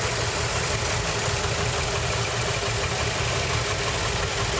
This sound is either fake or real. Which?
real